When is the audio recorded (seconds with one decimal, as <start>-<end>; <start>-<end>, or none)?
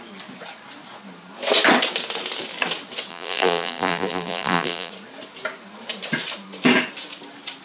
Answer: 0.0-3.1; 4.9-7.6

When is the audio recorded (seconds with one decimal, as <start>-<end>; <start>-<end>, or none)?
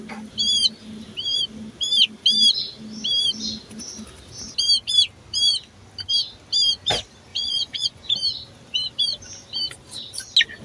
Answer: 0.0-7.3; 8.1-10.6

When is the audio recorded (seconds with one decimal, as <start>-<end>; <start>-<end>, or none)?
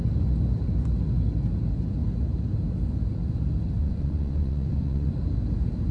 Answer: 0.0-3.8; 5.1-5.9